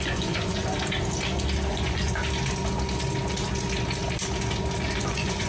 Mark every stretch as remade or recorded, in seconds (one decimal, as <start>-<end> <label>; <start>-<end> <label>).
0.0-0.6 remade; 0.6-1.7 recorded; 1.7-2.2 remade; 2.2-4.9 recorded; 4.9-5.5 remade